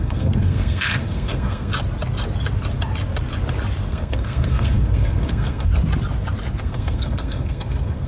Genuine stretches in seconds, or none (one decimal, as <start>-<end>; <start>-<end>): 1.7-3.9; 5.7-6.6